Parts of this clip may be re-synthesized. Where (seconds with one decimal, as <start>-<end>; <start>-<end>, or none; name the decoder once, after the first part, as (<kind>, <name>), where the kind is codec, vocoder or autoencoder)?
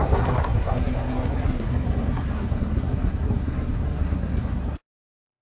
0.0-5.4 (codec, SNAC)